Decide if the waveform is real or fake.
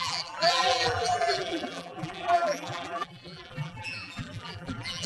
fake